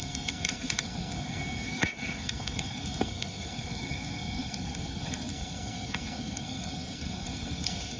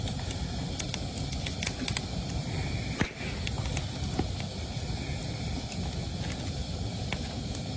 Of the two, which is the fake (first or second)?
first